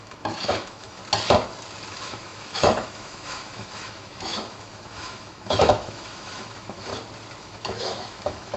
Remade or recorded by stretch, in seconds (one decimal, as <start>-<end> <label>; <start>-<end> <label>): 0.0-1.0 remade; 1.0-1.9 recorded; 1.9-6.9 remade; 6.9-7.4 recorded; 7.4-8.6 remade